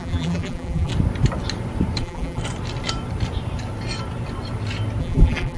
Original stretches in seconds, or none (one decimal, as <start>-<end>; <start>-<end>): 0.9-2.0; 2.4-5.0

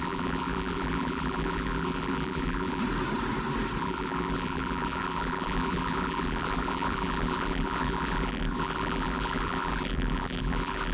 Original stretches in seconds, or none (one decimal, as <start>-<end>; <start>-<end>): 2.8-3.8

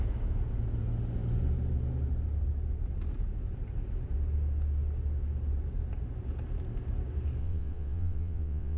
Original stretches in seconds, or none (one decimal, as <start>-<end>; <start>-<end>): 0.0-7.4

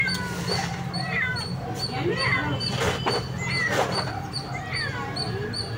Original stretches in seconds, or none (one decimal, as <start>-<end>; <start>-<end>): 0.0-5.8

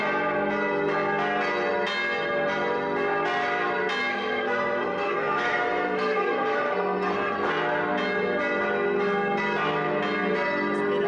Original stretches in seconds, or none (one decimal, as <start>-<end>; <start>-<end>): 0.0-4.1; 7.5-11.1